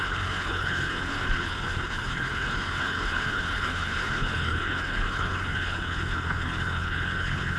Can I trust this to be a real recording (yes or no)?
no